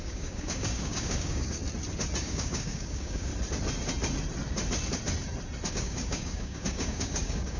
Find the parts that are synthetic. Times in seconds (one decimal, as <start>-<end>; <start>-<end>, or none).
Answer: 0.0-1.6; 2.2-3.3; 5.7-7.6